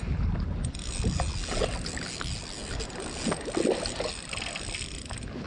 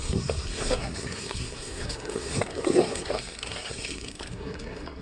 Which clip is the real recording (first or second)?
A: first